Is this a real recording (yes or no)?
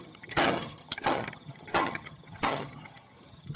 no